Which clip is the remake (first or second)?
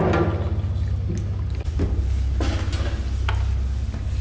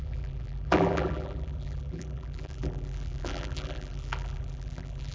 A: second